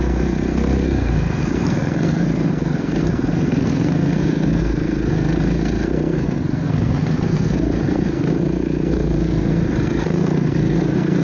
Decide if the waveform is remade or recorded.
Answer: remade